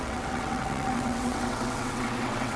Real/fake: fake